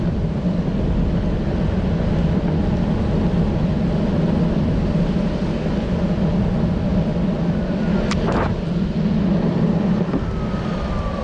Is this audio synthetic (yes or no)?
no